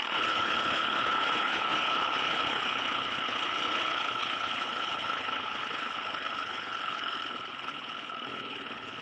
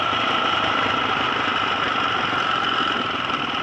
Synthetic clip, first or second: first